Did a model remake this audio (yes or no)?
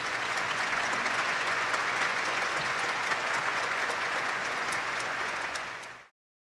yes